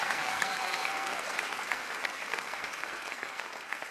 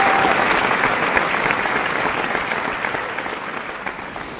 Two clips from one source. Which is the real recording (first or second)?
second